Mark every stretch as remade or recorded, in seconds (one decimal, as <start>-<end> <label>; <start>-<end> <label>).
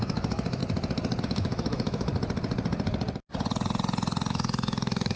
0.0-0.6 remade; 0.6-1.2 recorded; 1.2-2.1 remade; 2.1-4.3 recorded; 4.3-5.2 remade